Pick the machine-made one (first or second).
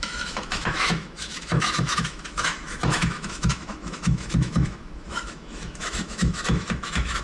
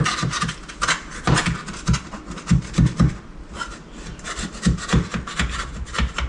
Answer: first